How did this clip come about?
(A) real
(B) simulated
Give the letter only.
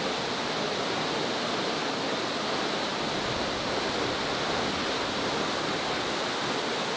A